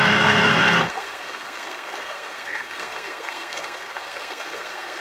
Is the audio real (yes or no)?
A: no